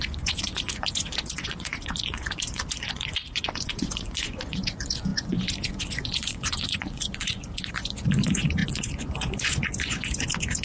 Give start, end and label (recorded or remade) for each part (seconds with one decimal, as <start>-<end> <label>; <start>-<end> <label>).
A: 0.0-10.6 remade